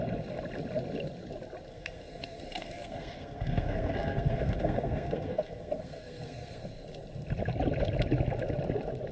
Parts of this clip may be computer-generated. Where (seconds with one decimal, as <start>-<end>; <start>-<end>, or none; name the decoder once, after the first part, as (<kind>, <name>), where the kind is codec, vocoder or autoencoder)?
1.7-6.7 (codec, SNAC)